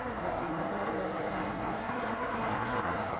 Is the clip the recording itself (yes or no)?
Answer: no